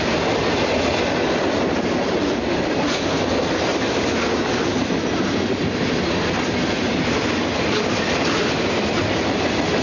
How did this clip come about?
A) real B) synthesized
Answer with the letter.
A